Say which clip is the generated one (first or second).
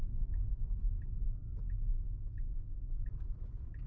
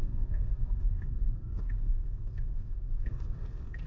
second